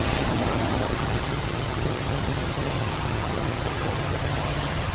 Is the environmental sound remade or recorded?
remade